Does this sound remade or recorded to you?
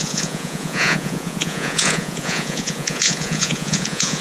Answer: remade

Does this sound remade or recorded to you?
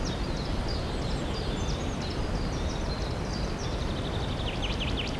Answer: recorded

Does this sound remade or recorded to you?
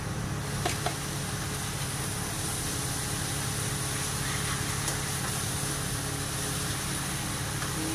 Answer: recorded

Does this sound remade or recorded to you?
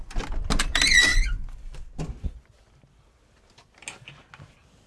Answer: recorded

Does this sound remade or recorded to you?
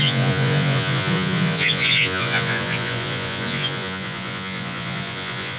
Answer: remade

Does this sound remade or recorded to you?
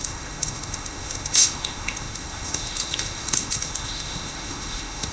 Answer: remade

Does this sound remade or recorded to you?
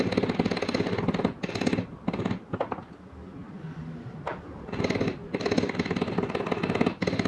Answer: recorded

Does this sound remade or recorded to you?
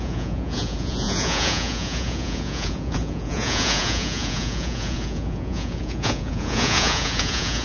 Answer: remade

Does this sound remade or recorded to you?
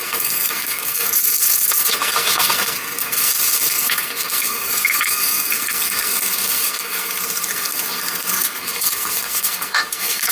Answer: remade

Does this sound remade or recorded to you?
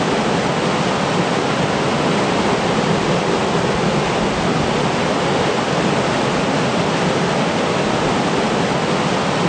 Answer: recorded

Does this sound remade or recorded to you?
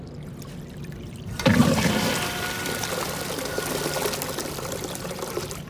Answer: recorded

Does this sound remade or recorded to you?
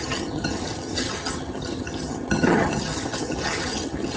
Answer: remade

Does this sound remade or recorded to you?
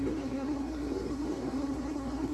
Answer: remade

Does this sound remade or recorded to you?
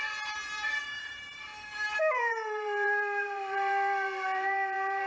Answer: remade